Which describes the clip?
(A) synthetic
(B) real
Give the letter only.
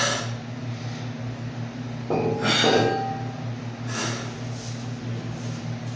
B